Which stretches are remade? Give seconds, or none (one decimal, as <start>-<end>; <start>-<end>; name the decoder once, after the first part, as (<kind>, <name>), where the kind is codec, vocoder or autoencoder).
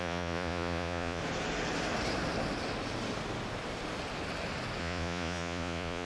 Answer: 0.0-1.2 (vocoder, Vocos); 4.8-6.0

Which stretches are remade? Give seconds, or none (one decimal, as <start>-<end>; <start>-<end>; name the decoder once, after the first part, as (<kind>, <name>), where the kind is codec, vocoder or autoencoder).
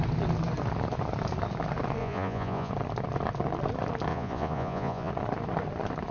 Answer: 2.0-2.7 (vocoder, Vocos); 4.1-5.1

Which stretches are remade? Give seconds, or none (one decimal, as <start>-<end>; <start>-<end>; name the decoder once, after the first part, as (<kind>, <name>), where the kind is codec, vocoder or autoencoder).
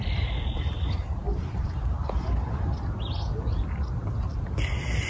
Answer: none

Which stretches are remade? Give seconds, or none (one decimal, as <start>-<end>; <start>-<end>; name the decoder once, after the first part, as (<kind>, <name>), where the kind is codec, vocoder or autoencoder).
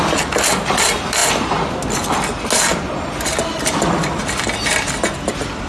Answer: none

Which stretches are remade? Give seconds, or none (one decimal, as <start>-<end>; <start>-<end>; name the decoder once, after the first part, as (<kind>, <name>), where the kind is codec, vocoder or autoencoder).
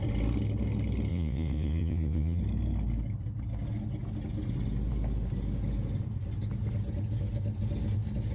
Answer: 1.1-2.4 (vocoder, Vocos)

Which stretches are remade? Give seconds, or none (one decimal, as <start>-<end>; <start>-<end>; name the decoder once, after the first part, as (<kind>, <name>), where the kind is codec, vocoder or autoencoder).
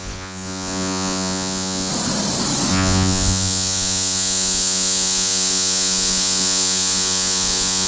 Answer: 0.0-1.9 (vocoder, Vocos); 2.7-7.9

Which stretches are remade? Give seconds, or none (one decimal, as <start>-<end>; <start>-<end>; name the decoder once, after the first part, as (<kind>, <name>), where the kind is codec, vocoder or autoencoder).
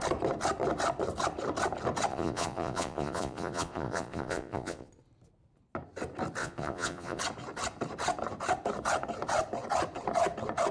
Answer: 2.1-4.9 (vocoder, Vocos); 6.4-7.2